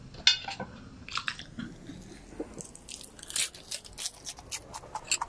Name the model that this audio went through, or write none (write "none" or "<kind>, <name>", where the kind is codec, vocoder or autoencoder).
none